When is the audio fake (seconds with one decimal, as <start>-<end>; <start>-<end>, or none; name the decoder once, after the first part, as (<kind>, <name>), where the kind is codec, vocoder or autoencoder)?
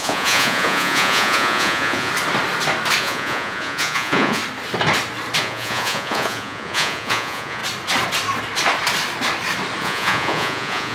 0.0-2.1 (vocoder, Vocos); 3.0-4.4; 5.4-7.6; 9.8-10.9